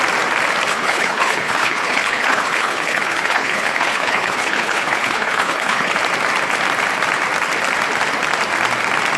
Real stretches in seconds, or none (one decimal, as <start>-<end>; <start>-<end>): 0.0-0.7; 5.9-9.2